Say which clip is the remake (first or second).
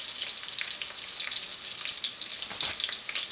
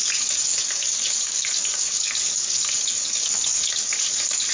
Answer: second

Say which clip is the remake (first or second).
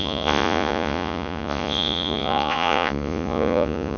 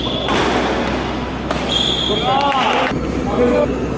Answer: first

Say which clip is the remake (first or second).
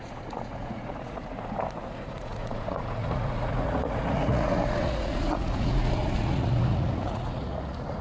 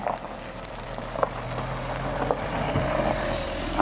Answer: first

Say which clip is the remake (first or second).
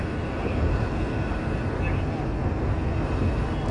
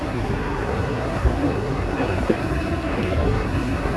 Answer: second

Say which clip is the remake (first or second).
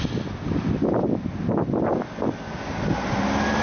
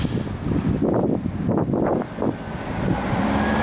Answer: second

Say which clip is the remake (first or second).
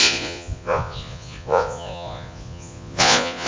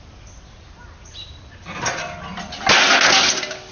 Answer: first